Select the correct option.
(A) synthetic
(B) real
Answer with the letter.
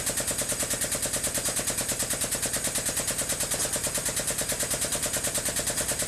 B